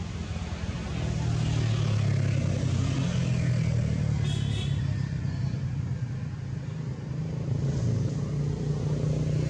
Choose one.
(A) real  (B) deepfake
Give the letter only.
A